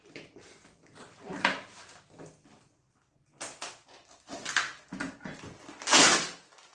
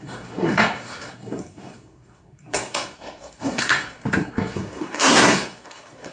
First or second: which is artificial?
second